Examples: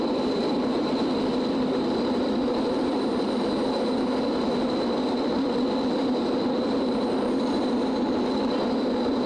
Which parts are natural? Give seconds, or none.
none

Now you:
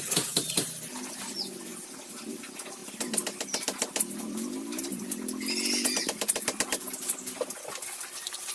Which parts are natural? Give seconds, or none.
none